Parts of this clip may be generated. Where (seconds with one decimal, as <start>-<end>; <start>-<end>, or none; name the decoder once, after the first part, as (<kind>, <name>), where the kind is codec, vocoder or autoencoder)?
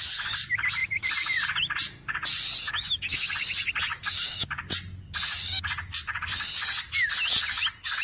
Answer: 2.6-3.3 (autoencoder, DAC-VAE); 3.9-4.6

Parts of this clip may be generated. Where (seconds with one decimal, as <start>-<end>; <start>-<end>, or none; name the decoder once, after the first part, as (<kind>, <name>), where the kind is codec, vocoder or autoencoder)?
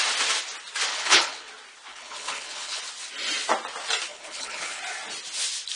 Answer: 0.9-1.5 (codec, HILCodec); 1.9-2.8; 4.1-4.8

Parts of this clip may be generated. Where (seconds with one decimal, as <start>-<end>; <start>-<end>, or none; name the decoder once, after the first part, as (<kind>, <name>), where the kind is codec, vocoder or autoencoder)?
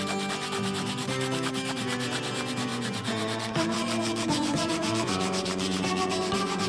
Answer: 2.7-6.7 (vocoder, Vocos)